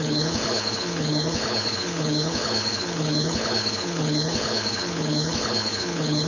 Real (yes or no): no